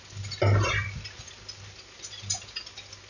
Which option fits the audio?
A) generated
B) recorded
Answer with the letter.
B